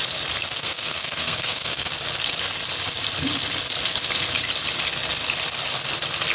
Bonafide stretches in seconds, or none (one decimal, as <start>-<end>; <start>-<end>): 0.0-0.5; 1.9-6.3